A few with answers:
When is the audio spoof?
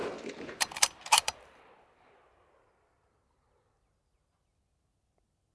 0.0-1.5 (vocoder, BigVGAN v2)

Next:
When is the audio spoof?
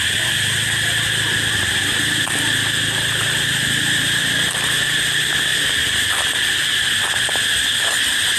0.0-3.6 (vocoder, BigVGAN v2); 4.5-6.7; 7.6-8.4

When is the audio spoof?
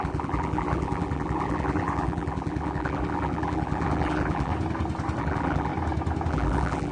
0.0-4.5 (vocoder, BigVGAN v2); 5.2-5.7; 6.3-6.9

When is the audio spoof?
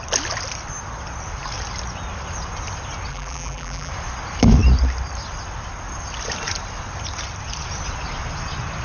3.1-3.9 (vocoder, BigVGAN v2)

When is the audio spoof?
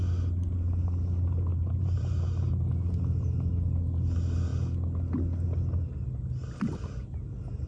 1.5-2.5 (vocoder, BigVGAN v2)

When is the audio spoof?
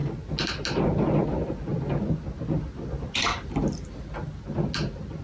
none